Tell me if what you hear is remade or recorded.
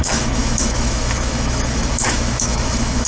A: remade